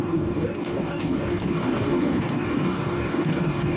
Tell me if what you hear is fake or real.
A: fake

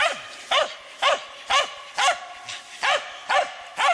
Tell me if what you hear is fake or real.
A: real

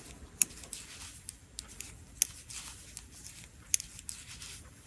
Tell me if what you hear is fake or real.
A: real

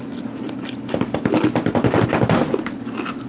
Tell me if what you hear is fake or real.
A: real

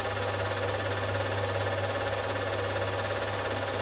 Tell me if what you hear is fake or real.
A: real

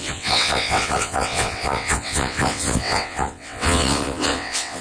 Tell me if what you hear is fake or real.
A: fake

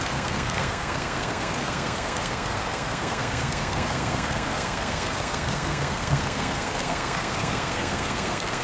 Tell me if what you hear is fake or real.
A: fake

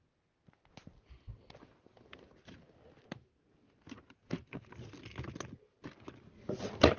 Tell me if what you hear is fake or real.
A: real